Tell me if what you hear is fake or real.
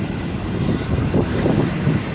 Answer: fake